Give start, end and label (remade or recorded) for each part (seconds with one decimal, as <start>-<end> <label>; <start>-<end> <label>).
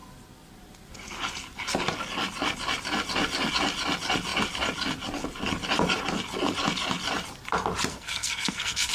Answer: 0.0-7.9 recorded; 7.9-8.9 remade